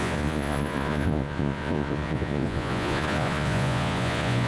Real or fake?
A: fake